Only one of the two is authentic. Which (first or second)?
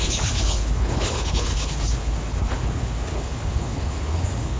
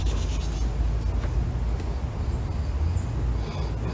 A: second